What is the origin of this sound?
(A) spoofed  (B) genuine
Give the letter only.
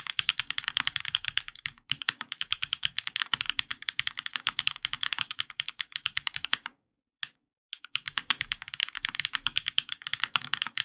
A